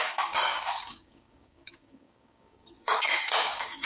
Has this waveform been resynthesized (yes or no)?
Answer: yes